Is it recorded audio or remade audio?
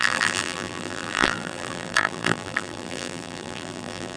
remade